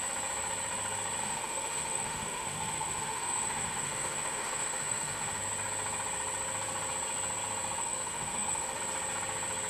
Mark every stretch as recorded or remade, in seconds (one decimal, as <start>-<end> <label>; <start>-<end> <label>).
0.0-1.2 recorded; 1.2-5.4 remade; 5.4-7.8 recorded; 7.8-8.8 remade; 8.8-9.7 recorded